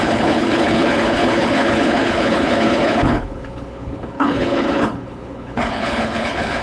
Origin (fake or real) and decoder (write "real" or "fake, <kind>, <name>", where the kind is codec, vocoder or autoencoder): fake, codec, HILCodec